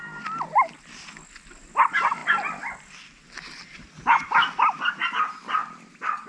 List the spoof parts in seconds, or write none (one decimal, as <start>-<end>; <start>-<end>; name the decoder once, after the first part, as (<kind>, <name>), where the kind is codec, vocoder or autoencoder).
none